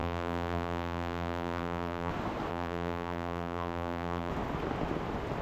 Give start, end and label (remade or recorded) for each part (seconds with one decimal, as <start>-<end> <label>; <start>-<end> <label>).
0.0-2.1 remade; 2.1-2.5 recorded; 2.5-4.3 remade; 4.3-5.4 recorded